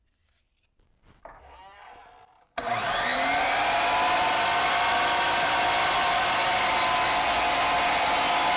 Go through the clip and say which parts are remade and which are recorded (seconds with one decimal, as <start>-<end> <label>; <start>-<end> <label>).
0.0-8.6 recorded